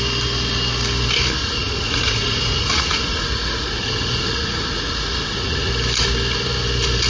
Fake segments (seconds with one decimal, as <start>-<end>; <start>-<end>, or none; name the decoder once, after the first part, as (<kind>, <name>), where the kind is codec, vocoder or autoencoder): 1.4-5.7 (vocoder, Vocos)